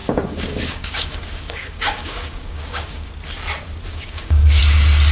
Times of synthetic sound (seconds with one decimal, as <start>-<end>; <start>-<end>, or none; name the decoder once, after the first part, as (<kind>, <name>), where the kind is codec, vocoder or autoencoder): 0.0-3.1 (codec, DAC); 3.9-4.6